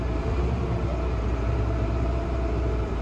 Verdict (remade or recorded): remade